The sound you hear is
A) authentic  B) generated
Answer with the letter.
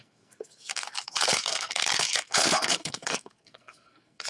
B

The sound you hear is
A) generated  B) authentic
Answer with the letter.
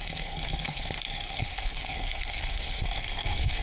A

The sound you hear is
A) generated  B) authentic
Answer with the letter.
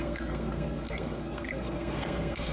A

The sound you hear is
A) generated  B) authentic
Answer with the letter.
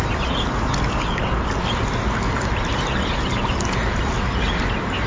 B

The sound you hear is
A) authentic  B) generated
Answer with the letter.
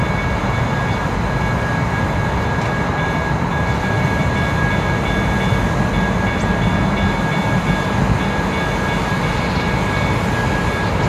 A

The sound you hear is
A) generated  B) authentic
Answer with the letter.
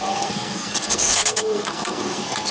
A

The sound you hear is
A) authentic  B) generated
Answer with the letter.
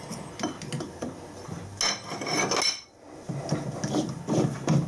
A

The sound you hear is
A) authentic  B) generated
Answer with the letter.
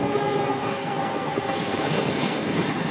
B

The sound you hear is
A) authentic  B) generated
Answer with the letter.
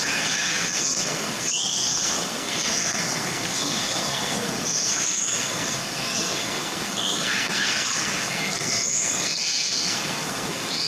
B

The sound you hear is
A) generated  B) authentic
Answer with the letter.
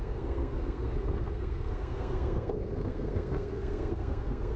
A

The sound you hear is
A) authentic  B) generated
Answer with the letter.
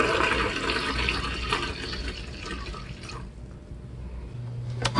A